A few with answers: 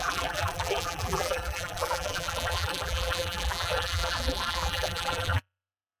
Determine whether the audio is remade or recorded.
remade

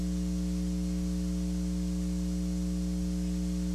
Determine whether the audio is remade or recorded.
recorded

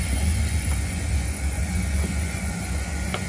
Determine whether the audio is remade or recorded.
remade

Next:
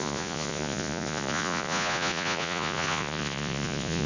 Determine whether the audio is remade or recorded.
remade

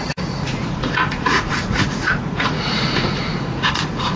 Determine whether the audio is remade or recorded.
remade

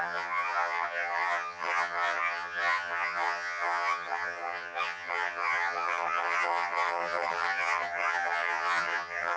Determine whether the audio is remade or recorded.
remade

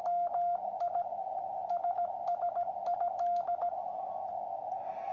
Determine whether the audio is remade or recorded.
recorded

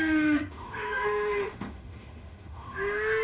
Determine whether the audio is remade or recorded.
remade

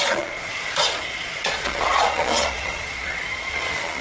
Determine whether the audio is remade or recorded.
remade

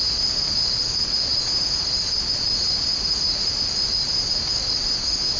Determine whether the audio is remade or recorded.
recorded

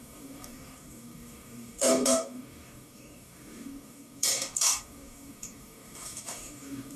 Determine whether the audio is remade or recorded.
remade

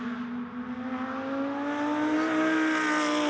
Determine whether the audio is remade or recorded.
recorded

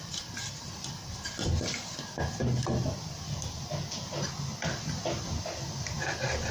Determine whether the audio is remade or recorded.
recorded